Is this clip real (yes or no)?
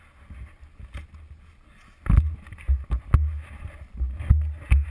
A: yes